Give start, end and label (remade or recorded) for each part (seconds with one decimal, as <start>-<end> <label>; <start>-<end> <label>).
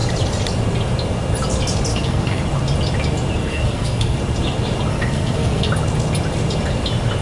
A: 0.0-1.9 recorded; 1.9-2.4 remade; 2.4-3.4 recorded; 3.4-4.2 remade; 4.2-4.9 recorded; 4.9-5.7 remade; 5.7-7.2 recorded